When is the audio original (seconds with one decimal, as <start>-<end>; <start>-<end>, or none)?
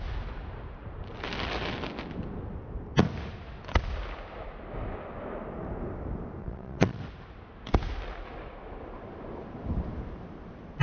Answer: 0.0-6.4; 7.0-10.8